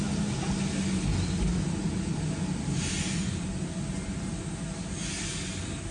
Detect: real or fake real